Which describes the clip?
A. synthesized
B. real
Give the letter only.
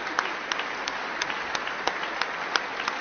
B